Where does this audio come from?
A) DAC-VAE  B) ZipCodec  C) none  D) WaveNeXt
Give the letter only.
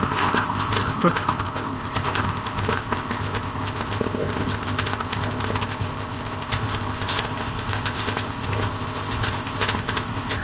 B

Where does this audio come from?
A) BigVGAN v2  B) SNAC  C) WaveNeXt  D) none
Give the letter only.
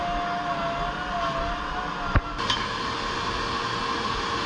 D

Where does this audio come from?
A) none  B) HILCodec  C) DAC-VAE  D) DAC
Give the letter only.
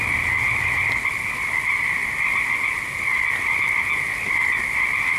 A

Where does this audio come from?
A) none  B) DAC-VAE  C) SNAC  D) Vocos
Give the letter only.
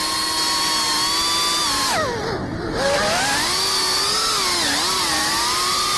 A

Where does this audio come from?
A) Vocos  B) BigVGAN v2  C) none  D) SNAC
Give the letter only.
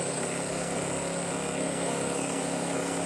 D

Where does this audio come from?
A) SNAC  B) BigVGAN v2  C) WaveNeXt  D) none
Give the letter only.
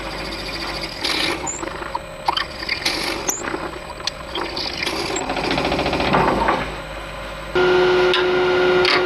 D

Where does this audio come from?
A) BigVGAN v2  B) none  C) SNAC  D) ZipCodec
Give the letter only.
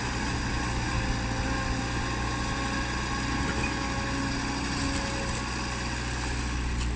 B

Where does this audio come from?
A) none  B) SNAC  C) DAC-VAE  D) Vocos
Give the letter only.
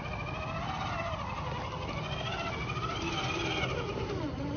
A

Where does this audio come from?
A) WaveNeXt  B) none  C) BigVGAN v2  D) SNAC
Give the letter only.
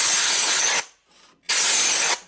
B